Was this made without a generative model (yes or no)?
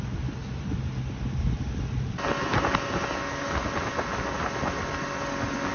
yes